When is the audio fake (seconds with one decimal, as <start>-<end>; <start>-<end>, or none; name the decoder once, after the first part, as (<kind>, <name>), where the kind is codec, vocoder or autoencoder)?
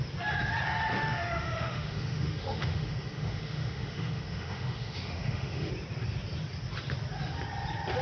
0.9-5.7 (autoencoder, DAC-VAE)